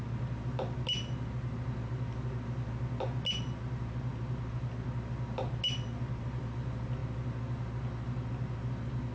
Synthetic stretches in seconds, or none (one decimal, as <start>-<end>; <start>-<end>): none

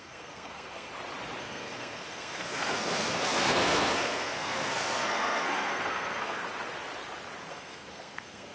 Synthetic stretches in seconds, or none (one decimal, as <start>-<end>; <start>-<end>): 0.0-0.9; 1.4-6.4; 7.5-8.5

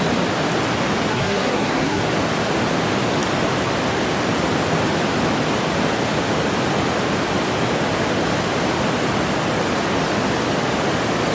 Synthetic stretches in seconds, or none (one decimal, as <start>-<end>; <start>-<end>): 1.1-2.0

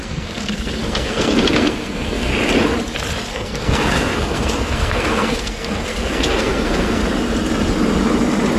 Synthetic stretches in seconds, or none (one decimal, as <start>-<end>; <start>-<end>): 0.0-2.3; 3.3-7.0